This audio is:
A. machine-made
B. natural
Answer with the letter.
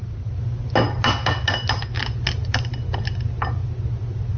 B